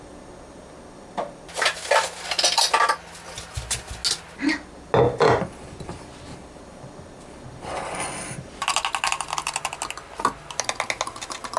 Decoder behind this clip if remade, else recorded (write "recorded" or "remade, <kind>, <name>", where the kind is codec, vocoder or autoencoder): recorded